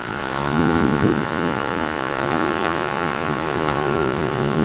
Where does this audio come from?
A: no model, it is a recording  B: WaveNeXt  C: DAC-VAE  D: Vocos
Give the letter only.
D